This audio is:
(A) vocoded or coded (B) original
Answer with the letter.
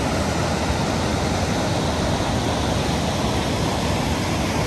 B